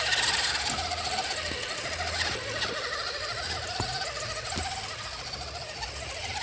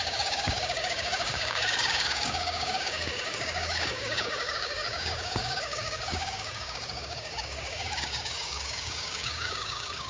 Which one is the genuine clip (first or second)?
first